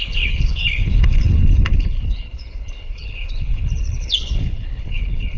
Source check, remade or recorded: remade